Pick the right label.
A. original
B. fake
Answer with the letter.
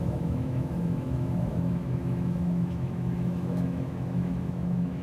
B